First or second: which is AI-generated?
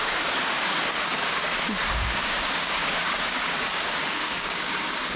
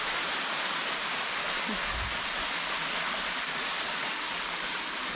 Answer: first